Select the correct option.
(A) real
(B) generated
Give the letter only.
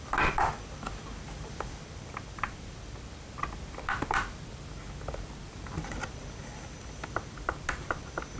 B